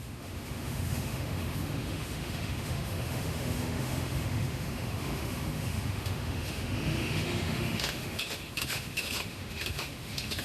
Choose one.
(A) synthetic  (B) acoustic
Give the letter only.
A